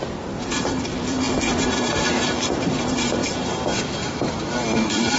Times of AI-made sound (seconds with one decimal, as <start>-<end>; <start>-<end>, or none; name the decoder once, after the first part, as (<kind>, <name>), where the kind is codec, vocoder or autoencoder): 0.0-0.9 (vocoder, BigVGAN v2); 1.5-5.2